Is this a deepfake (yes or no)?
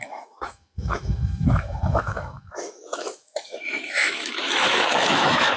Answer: yes